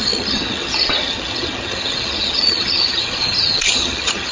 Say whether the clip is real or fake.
fake